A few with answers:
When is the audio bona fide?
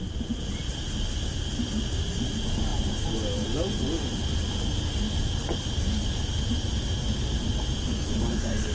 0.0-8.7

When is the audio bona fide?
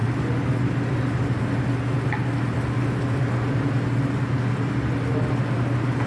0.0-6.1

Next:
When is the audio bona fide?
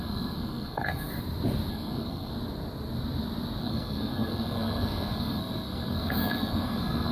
1.1-1.7; 2.3-3.6